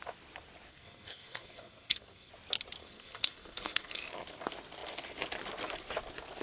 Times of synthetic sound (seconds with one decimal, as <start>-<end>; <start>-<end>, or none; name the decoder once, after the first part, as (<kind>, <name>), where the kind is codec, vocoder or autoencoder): 0.7-2.3 (codec, SNAC); 2.8-4.0